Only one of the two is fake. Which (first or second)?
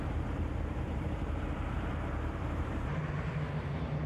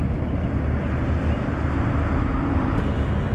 first